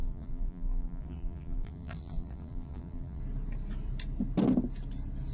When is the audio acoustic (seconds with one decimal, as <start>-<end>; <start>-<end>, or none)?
3.2-5.3